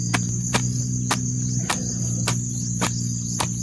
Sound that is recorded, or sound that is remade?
recorded